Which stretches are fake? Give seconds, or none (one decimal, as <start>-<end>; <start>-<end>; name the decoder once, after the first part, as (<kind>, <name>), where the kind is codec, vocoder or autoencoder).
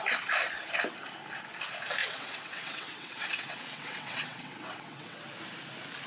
2.0-5.2 (vocoder, WaveNeXt)